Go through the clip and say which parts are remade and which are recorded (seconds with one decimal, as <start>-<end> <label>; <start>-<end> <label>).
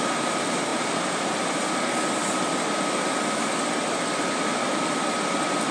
0.0-5.7 remade